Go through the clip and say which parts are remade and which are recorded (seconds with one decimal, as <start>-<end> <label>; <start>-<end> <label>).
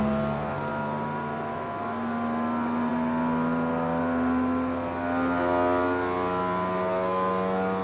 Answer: 0.0-7.8 recorded